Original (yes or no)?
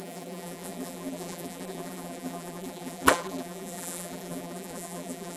no